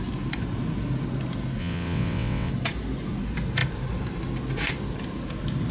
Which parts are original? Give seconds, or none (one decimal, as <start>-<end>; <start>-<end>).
0.0-1.6; 2.5-5.7